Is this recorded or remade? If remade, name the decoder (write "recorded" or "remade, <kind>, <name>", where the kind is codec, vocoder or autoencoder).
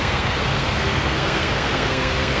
remade, codec, SNAC